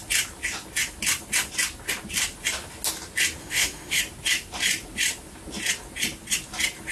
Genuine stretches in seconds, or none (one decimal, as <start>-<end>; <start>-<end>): 0.0-3.4; 4.0-6.9